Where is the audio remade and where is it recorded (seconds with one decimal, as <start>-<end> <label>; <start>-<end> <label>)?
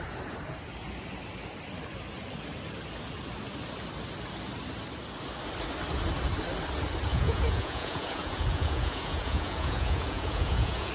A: 0.0-7.1 recorded; 7.1-10.9 remade